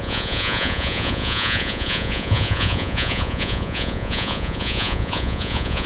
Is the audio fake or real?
fake